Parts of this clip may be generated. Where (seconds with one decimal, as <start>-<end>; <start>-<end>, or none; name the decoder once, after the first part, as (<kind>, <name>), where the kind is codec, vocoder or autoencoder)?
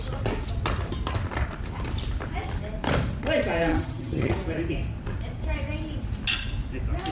3.7-4.3 (vocoder, HiFi-GAN)